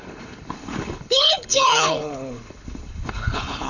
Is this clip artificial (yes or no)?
yes